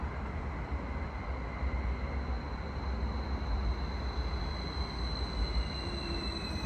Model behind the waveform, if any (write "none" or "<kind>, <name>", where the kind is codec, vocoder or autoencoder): none